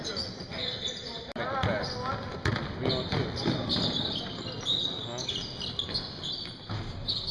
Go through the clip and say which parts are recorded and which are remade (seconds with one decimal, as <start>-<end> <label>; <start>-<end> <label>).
0.0-7.3 recorded